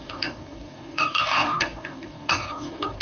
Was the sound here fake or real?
fake